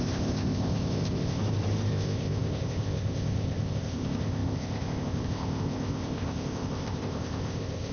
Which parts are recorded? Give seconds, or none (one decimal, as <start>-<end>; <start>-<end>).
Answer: 1.4-1.9